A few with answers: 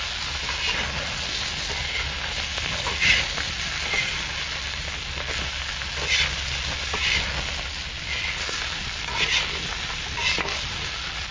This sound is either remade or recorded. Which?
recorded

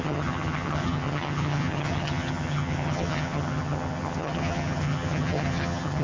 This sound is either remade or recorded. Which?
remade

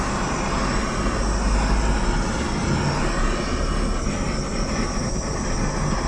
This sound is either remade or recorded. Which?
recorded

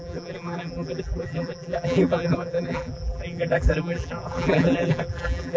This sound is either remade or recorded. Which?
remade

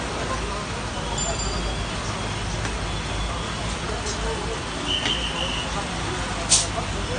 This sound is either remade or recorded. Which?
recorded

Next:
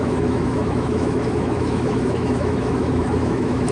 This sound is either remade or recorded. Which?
remade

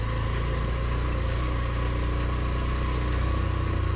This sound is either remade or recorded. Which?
recorded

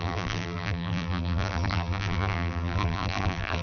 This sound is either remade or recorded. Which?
remade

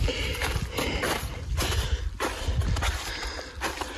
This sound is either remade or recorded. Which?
recorded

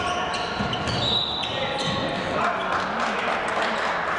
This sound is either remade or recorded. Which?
recorded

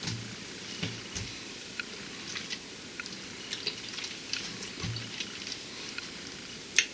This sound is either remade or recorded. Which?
recorded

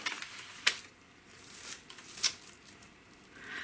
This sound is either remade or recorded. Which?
recorded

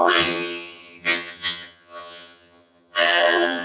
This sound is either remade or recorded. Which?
remade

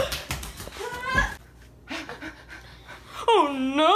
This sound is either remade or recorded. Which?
recorded